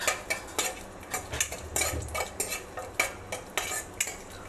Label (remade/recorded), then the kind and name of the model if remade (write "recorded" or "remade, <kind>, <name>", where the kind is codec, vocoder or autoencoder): recorded